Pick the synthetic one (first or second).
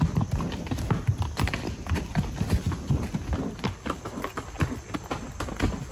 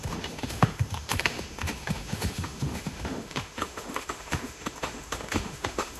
second